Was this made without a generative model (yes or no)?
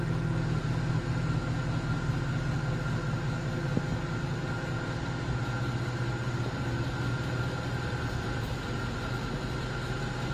yes